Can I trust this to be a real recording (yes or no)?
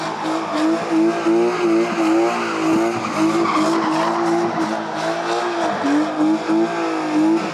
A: yes